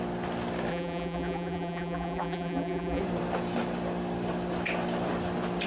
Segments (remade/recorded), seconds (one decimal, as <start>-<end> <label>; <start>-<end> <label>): 0.0-0.7 recorded; 0.7-3.0 remade; 3.0-5.7 recorded